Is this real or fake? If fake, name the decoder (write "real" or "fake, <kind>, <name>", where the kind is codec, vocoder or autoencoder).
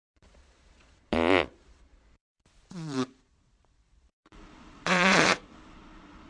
fake, vocoder, Vocos